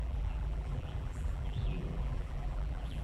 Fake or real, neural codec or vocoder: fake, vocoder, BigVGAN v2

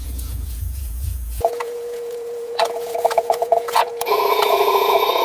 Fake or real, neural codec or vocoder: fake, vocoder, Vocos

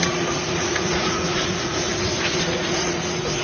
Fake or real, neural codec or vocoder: fake, vocoder, Vocos